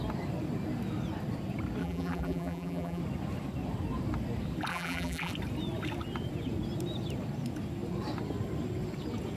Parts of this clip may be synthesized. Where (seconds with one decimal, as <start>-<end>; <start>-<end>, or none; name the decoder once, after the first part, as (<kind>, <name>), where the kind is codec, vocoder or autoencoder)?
1.8-3.0 (vocoder, BigVGAN v2); 4.7-5.3